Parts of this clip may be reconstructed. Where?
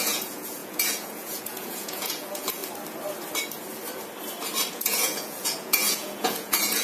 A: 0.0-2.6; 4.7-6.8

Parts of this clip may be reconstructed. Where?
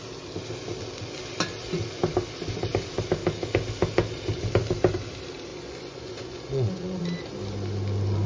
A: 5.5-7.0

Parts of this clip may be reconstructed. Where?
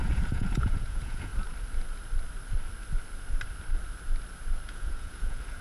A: 0.0-1.3; 4.7-5.6